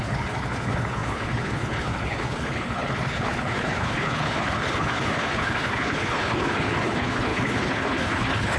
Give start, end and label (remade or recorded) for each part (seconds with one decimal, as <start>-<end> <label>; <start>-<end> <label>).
0.0-8.6 remade